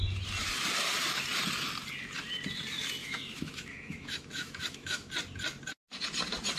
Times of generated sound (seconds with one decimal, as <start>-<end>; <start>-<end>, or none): 3.0-5.1